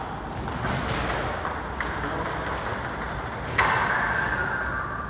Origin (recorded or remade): recorded